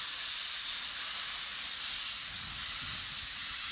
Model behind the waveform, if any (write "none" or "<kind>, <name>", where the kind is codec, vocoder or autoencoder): none